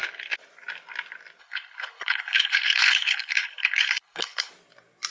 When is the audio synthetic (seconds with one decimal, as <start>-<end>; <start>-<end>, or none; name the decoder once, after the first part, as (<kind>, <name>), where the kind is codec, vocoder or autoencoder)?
1.4-4.5 (codec, HILCodec)